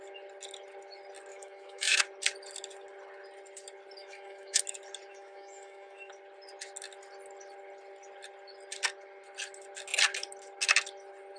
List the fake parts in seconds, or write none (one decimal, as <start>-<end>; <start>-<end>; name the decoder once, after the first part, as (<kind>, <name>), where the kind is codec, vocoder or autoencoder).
1.3-2.0 (autoencoder, DAC-VAE); 4.0-4.6; 5.1-6.1